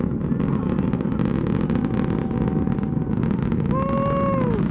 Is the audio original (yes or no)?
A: yes